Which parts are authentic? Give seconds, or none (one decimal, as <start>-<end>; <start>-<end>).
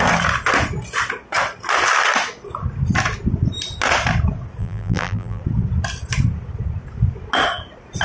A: 0.0-4.6; 5.4-8.0